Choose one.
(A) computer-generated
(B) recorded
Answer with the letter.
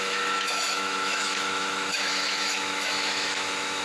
A